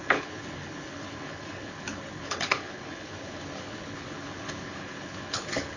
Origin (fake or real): fake